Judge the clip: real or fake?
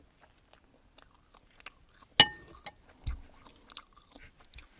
real